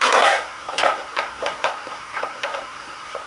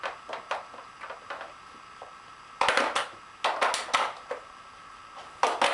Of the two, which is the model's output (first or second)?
first